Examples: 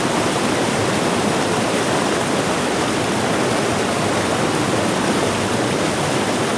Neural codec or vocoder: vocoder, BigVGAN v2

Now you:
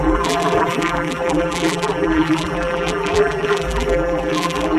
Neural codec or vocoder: vocoder, BigVGAN v2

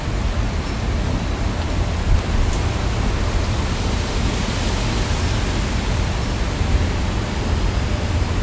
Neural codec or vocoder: none